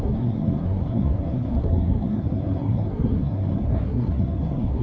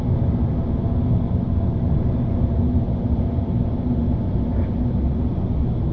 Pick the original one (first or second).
second